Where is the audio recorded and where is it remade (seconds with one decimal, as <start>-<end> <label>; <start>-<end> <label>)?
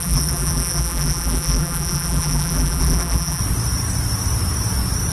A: 0.0-3.4 remade; 3.4-5.1 recorded